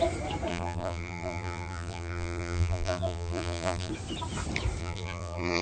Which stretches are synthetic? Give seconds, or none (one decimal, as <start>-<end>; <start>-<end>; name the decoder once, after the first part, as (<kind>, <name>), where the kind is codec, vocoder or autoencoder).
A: 0.5-3.9 (vocoder, BigVGAN v2); 4.8-5.6